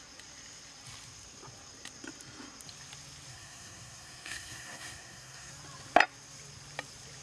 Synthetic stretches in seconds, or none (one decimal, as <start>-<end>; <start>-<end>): 3.3-5.5

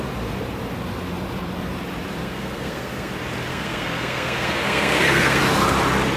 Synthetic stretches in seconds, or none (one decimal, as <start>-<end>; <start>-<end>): 2.2-3.1; 3.5-5.4

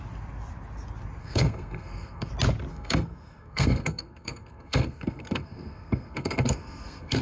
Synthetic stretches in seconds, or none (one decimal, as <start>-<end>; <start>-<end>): 1.2-2.3; 2.7-7.2

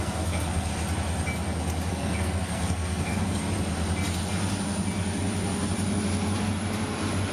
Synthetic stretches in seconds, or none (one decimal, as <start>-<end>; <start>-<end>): 0.0-0.7; 1.9-3.4

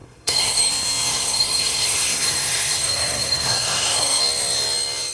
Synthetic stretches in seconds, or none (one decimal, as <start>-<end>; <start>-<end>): 0.0-0.7; 1.1-4.2

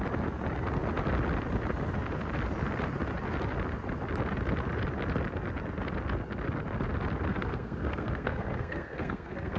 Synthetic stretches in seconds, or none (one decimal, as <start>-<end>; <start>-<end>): 7.3-9.6

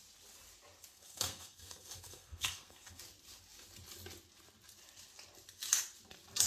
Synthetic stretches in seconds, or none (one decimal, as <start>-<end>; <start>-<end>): 0.9-3.0

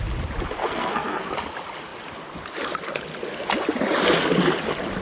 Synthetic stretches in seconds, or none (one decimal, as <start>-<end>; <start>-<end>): 0.6-1.3